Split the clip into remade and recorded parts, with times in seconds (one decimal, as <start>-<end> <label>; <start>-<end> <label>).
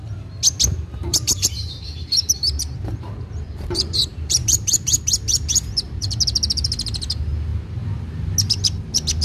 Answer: 0.0-1.1 recorded; 1.1-6.1 remade; 6.1-9.2 recorded